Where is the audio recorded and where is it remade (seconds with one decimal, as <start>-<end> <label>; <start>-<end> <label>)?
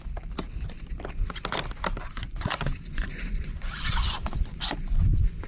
0.0-2.0 recorded; 2.0-5.5 remade